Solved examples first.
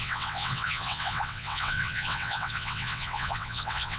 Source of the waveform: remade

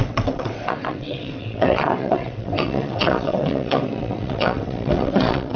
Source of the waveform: remade